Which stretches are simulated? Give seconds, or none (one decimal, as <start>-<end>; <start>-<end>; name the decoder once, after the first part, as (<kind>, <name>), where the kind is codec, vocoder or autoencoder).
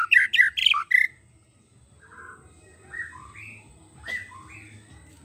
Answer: none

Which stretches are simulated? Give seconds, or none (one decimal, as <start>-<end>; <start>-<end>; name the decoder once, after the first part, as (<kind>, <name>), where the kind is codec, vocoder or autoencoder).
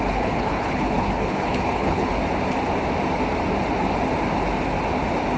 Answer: 0.0-2.1 (codec, HILCodec)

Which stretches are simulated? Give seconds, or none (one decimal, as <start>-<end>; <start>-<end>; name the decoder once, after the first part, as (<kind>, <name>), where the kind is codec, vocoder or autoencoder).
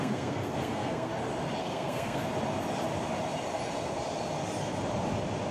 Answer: 0.0-1.1 (codec, SNAC); 1.6-2.2